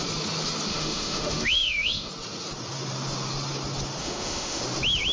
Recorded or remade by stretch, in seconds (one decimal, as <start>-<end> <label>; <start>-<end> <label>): 0.0-0.7 recorded; 0.7-2.1 remade; 2.1-4.0 recorded; 4.0-4.6 remade; 4.6-5.1 recorded